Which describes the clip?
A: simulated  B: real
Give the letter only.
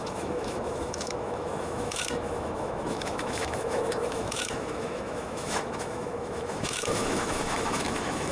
A